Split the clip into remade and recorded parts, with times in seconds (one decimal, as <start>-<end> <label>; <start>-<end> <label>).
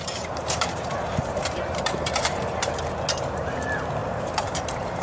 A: 0.0-2.9 remade; 2.9-4.0 recorded; 4.0-5.0 remade